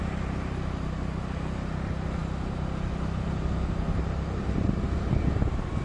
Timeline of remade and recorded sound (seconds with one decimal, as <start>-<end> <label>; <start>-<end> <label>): 0.0-5.8 recorded